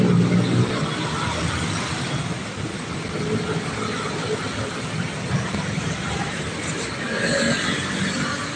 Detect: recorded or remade recorded